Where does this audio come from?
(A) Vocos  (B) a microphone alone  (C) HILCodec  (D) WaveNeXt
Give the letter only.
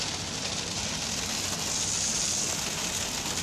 B